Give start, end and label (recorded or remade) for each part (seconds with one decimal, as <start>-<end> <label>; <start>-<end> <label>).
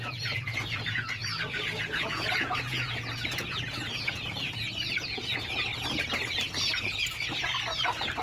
0.0-5.7 remade; 5.7-6.7 recorded; 6.7-7.5 remade; 7.5-8.2 recorded